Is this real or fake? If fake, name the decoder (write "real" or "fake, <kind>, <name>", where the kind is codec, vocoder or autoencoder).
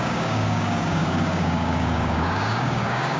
fake, codec, DAC